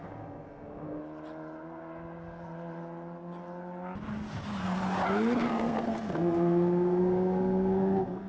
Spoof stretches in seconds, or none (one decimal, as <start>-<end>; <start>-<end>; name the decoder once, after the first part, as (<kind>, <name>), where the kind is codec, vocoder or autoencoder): 0.0-1.0 (codec, SNAC); 5.4-8.3